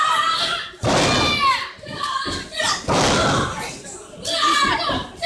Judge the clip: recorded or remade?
recorded